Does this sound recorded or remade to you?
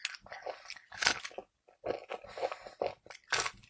recorded